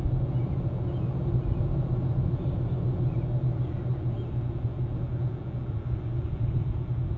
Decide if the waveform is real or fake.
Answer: real